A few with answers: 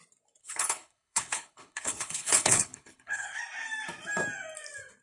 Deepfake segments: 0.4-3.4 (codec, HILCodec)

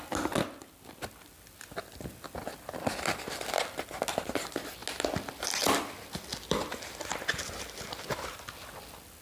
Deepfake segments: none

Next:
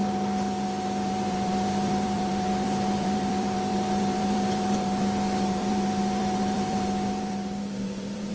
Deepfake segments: 1.1-8.3 (vocoder, BigVGAN v2)

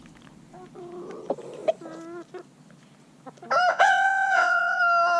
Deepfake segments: 3.7-4.8 (vocoder, WaveNeXt)

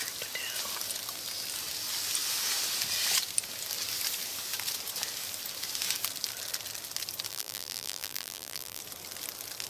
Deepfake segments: 7.3-8.8 (vocoder, BigVGAN v2)

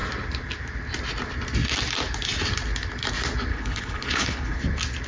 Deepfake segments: 3.5-4.6 (codec, HILCodec)

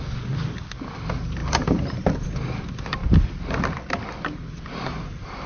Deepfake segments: 1.4-1.9 (vocoder, BigVGAN v2)

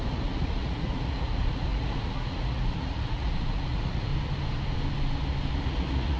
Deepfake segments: 0.0-4.1 (vocoder, Vocos); 5.6-6.2